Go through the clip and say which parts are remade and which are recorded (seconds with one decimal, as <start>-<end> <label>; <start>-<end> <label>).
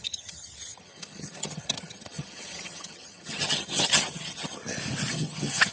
0.0-4.6 remade; 4.6-5.1 recorded; 5.1-5.7 remade